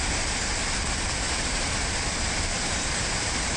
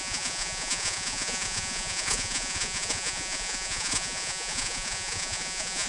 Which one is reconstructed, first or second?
second